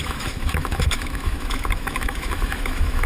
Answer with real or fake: fake